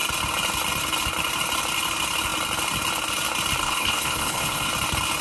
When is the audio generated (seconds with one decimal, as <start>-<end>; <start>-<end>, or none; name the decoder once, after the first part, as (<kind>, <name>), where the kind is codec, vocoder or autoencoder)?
3.6-4.7 (codec, HILCodec)